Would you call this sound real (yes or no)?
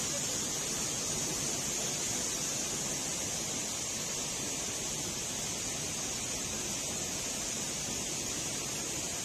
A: yes